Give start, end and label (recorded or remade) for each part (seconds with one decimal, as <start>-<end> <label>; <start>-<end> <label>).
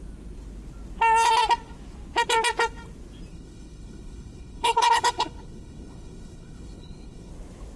0.0-3.3 recorded; 3.3-7.3 remade; 7.3-7.8 recorded